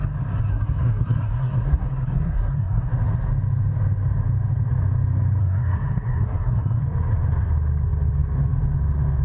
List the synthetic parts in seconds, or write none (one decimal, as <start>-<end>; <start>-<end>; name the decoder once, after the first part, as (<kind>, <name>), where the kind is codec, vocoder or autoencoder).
0.5-2.9 (codec, SNAC); 5.4-6.8